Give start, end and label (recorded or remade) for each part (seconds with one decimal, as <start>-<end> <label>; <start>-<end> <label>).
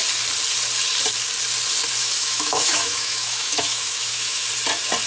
0.0-2.0 recorded; 2.0-4.5 remade; 4.5-5.1 recorded